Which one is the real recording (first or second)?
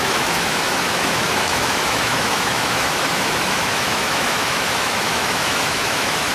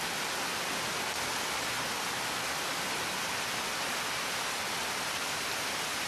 second